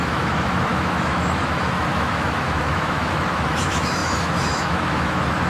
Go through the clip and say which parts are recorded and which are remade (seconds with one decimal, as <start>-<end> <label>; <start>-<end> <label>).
0.0-5.5 remade